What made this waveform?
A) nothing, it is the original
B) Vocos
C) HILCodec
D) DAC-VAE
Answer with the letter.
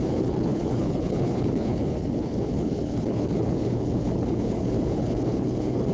C